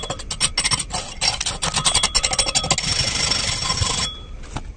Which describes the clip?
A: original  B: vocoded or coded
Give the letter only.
A